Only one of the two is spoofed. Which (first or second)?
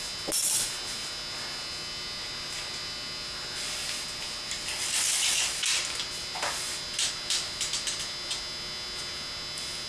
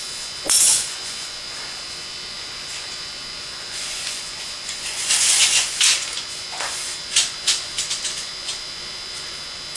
second